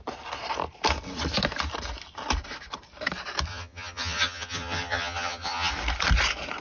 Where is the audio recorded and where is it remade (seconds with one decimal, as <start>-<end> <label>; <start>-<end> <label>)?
0.0-3.5 recorded; 3.5-5.7 remade; 5.7-6.6 recorded